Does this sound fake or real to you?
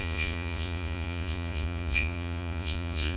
fake